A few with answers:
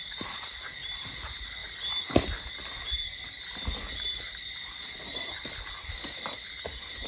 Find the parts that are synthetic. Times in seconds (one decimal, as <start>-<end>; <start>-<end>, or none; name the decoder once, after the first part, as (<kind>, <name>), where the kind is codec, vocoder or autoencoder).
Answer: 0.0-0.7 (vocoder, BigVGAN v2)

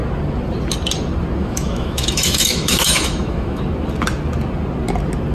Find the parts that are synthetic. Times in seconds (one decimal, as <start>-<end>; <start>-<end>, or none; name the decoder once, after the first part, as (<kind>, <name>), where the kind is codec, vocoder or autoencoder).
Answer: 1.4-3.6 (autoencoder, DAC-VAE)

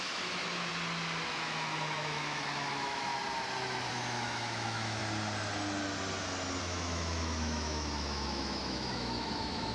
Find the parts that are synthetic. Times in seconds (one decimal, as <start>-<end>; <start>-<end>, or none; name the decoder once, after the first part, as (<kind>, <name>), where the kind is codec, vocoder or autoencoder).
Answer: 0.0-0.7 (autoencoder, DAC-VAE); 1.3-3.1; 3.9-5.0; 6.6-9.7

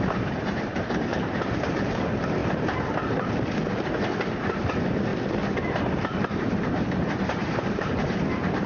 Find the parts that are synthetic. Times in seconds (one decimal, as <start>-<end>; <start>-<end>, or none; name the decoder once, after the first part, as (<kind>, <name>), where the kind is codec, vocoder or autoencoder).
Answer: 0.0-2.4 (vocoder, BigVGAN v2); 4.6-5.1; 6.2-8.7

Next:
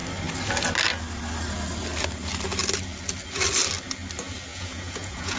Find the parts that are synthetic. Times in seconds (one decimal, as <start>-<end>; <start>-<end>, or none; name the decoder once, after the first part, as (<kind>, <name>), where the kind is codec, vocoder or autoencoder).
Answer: 4.5-5.4 (vocoder, Vocos)